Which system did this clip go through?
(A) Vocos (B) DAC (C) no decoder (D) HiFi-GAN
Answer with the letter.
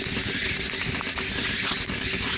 C